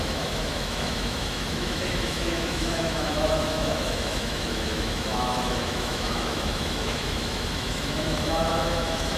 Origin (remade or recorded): remade